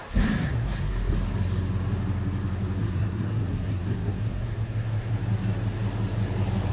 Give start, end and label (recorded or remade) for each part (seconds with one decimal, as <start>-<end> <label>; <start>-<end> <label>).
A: 0.0-0.9 remade; 0.9-2.8 recorded; 2.8-5.1 remade; 5.1-6.7 recorded